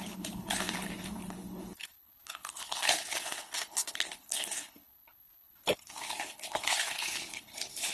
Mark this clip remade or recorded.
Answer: remade